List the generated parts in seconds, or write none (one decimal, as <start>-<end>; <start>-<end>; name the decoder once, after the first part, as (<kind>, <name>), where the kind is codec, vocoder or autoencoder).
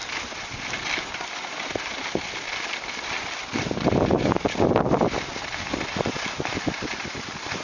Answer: none